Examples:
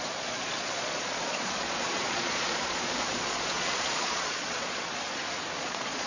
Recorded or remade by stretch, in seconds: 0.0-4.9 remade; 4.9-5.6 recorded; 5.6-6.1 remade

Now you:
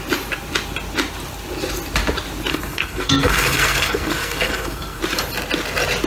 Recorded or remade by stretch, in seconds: 0.0-2.5 recorded; 2.5-5.0 remade; 5.0-6.1 recorded

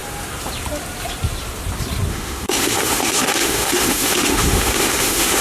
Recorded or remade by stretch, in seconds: 0.0-2.1 recorded; 2.1-5.4 remade

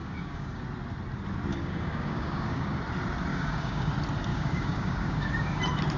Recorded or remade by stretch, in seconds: 0.0-0.6 remade; 0.6-1.5 recorded; 1.5-2.8 remade; 2.8-3.3 recorded; 3.3-3.9 remade; 3.9-4.3 recorded; 4.3-5.6 remade; 5.6-6.0 recorded

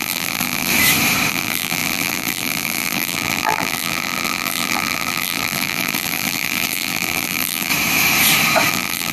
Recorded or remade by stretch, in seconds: 0.0-0.7 remade; 0.7-1.3 recorded; 1.3-7.7 remade; 7.7-8.7 recorded; 8.7-9.1 remade

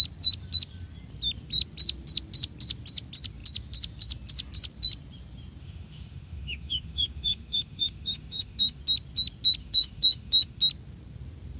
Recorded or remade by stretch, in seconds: 0.0-5.6 recorded; 5.6-8.8 remade; 8.8-9.6 recorded; 9.6-10.6 remade; 10.6-11.6 recorded

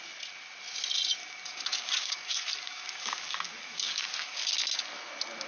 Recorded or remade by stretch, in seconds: 0.0-1.2 recorded; 1.2-4.5 remade; 4.5-5.5 recorded

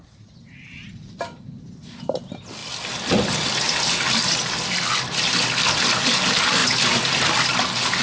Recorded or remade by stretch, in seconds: 0.0-8.0 recorded